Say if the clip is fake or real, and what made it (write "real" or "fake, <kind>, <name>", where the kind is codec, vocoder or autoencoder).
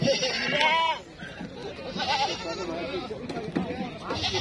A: real